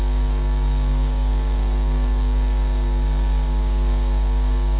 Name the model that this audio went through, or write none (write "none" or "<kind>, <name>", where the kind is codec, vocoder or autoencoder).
codec, DAC